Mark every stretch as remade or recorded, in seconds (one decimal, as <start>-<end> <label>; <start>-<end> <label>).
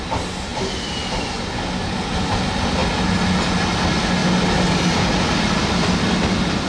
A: 0.0-6.7 recorded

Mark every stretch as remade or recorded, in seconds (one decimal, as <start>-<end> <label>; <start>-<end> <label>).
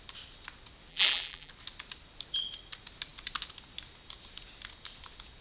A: 0.0-0.9 recorded; 0.9-1.5 remade; 1.5-5.4 recorded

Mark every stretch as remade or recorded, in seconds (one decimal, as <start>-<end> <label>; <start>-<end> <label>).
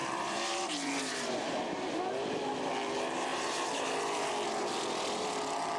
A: 0.0-2.7 remade; 2.7-3.3 recorded; 3.3-3.9 remade; 3.9-5.8 recorded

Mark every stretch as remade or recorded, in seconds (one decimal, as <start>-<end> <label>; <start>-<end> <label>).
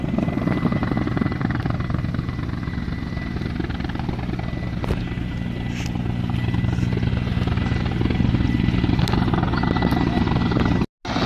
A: 0.0-11.3 recorded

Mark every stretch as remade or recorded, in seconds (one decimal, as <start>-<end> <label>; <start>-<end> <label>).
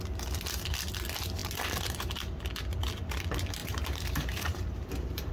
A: 0.0-3.6 recorded; 3.6-5.3 remade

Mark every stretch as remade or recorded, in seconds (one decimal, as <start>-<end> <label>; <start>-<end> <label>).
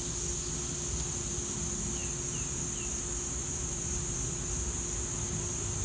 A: 0.0-3.4 recorded; 3.4-4.6 remade; 4.6-5.8 recorded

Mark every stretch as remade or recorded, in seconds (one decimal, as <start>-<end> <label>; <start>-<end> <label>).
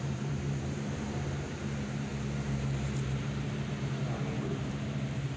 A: 0.0-2.1 remade; 2.1-4.5 recorded; 4.5-5.4 remade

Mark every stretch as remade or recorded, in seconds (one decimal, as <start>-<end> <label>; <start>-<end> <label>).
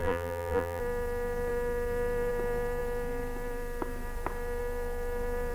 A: 0.0-0.8 remade; 0.8-5.5 recorded